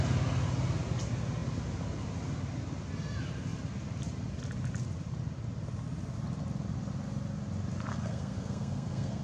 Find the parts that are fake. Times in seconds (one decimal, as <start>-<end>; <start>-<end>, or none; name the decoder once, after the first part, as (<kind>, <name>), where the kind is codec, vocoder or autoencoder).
7.9-9.2 (codec, SNAC)